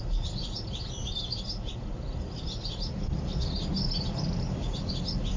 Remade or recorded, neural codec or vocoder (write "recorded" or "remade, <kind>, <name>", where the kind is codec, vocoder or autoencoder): recorded